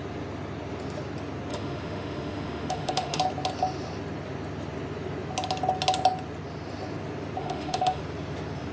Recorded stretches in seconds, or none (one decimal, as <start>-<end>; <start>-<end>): 0.0-1.5; 3.2-7.4; 8.0-8.7